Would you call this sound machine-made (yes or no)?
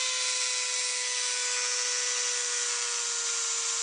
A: no